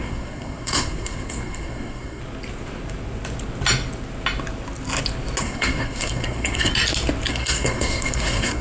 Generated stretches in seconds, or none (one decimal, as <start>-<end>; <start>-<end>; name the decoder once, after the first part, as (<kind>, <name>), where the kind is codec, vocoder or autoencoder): 0.0-2.2 (codec, SNAC); 5.4-6.7; 7.3-8.6